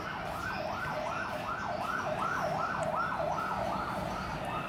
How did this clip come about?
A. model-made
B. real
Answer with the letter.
B